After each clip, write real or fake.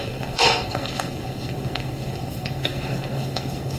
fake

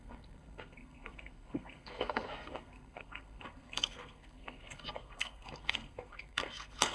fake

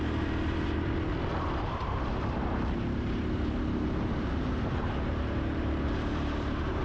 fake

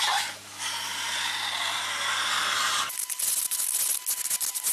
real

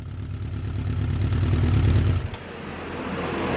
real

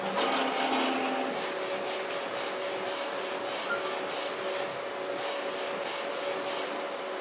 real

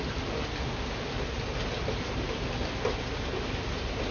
real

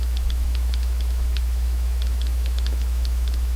fake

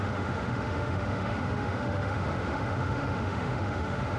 fake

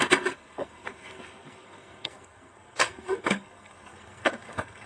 fake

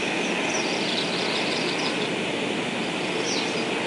real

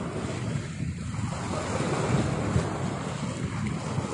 real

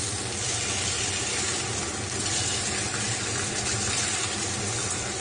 real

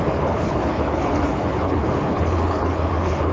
fake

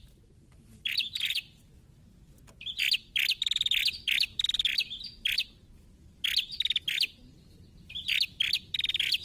real